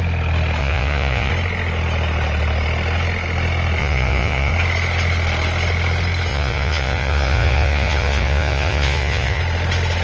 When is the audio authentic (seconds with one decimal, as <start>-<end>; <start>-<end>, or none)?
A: 0.0-0.6; 1.3-3.8; 4.5-6.3; 9.4-10.0